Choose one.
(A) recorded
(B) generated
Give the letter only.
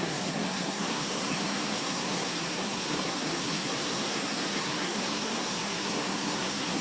B